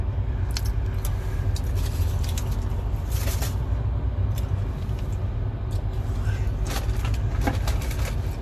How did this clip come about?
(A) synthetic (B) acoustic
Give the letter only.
B